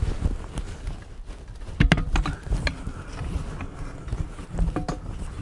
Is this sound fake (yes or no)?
no